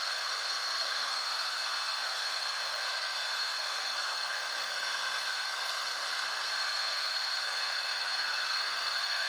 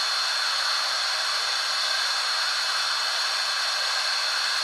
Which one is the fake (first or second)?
first